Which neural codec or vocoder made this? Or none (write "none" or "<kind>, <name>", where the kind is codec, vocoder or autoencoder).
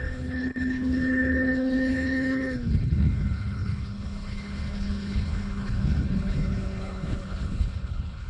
codec, HILCodec